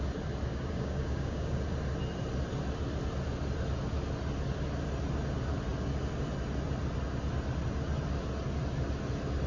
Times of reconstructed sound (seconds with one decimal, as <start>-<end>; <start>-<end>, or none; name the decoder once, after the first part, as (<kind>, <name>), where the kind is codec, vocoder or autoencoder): 0.5-1.6 (codec, DAC)